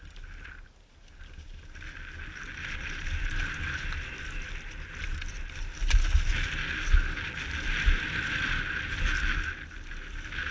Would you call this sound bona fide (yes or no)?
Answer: yes